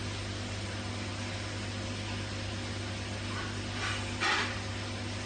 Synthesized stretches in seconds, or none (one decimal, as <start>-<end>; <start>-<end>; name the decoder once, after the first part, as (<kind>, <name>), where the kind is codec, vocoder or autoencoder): none